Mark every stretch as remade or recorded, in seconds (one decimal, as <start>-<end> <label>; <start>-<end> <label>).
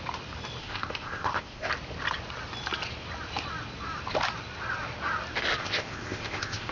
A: 0.0-0.6 recorded; 0.6-1.7 remade; 1.7-5.6 recorded; 5.6-6.7 remade